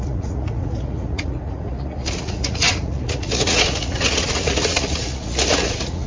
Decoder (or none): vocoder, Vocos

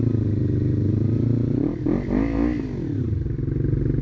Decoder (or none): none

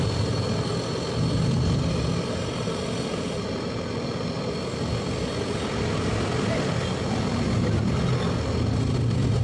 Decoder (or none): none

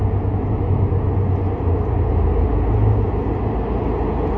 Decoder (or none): none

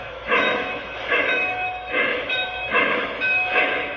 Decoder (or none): autoencoder, DAC-VAE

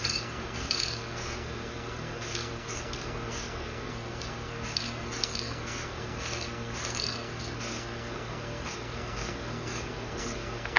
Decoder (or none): codec, SNAC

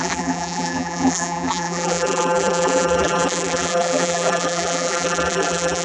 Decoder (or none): vocoder, BigVGAN v2